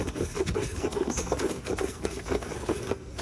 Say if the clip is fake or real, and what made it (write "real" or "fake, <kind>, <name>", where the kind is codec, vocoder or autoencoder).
fake, codec, SNAC